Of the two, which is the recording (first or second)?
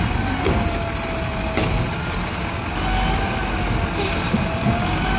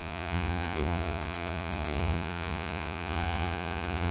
first